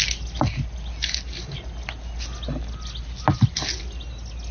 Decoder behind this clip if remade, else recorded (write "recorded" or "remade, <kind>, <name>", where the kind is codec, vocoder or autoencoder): recorded